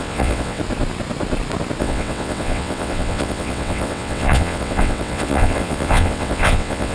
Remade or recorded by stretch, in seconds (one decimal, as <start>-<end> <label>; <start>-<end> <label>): 0.0-0.6 remade; 0.6-1.8 recorded; 1.8-6.9 remade